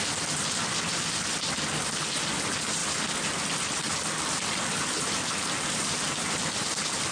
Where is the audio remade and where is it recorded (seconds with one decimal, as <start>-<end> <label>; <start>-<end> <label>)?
0.0-7.1 recorded